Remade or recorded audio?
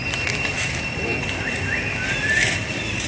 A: recorded